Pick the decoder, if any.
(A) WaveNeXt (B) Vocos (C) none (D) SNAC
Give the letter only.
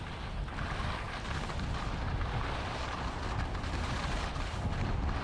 C